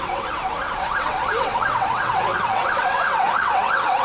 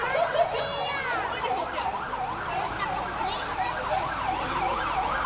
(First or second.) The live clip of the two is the second